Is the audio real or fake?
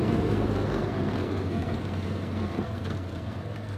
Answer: fake